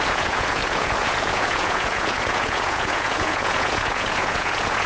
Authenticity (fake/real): fake